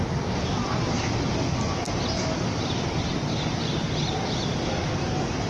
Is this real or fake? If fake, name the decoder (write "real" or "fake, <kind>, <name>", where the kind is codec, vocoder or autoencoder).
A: real